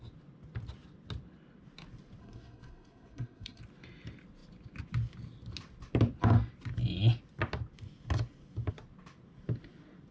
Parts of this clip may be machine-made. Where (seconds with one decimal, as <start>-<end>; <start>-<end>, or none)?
2.2-3.6